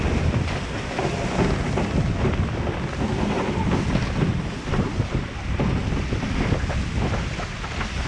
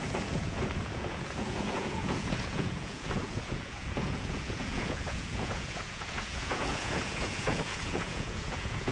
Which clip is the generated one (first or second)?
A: second